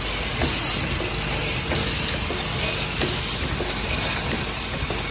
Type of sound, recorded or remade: recorded